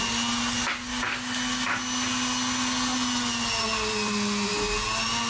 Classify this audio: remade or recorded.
recorded